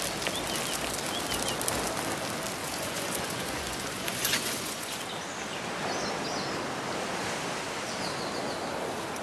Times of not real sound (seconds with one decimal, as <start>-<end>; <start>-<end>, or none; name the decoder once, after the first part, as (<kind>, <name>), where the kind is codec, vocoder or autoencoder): 2.6-5.0 (vocoder, Vocos)